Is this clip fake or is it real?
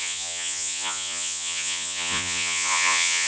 fake